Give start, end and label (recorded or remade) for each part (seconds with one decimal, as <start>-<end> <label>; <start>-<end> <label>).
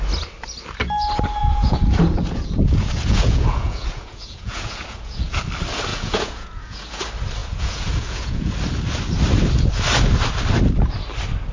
0.0-1.4 recorded; 1.4-5.4 remade; 5.4-5.9 recorded; 5.9-7.0 remade; 7.0-7.4 recorded; 7.4-8.5 remade; 8.5-11.5 recorded